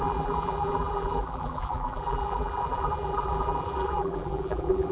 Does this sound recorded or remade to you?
remade